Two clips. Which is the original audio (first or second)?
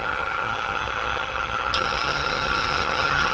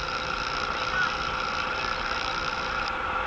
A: second